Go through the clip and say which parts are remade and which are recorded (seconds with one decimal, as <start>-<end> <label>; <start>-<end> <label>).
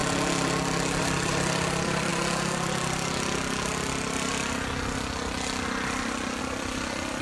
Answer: 0.0-1.0 recorded; 1.0-2.1 remade; 2.1-6.4 recorded; 6.4-7.2 remade